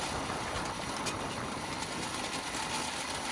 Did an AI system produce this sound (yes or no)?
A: no